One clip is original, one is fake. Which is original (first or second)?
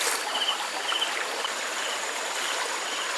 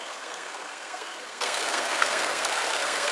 first